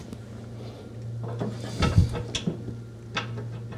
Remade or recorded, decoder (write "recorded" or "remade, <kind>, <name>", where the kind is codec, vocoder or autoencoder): recorded